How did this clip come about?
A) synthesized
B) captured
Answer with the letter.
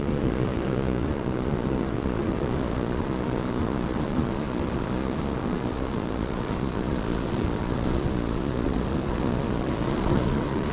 A